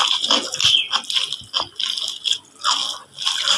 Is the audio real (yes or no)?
yes